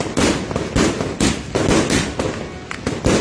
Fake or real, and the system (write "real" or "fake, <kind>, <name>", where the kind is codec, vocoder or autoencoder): real